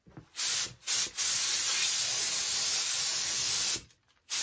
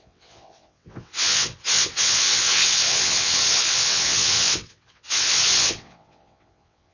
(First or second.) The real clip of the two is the first